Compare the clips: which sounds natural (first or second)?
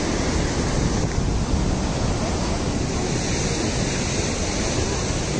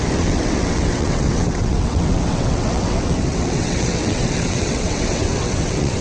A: first